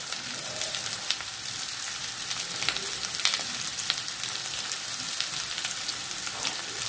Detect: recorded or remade remade